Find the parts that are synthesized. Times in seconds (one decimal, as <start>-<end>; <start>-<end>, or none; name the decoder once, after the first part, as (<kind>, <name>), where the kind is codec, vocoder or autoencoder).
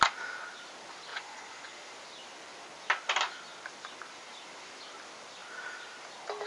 1.1-1.7 (vocoder, Vocos)